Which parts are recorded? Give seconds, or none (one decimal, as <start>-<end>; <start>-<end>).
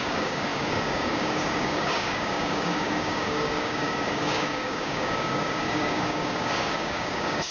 none